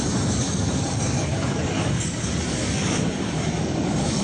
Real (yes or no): no